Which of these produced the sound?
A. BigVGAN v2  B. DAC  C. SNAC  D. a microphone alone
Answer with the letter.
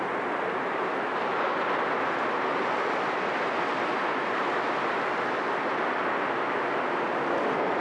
D